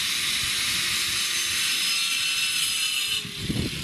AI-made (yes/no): no